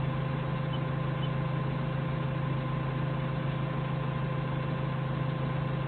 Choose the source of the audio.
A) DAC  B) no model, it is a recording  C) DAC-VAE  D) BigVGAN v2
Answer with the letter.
B